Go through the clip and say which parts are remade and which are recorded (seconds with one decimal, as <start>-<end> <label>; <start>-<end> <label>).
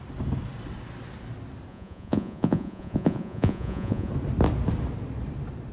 0.0-1.7 recorded; 1.7-4.1 remade; 4.1-5.7 recorded